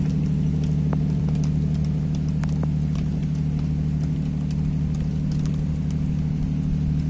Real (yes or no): yes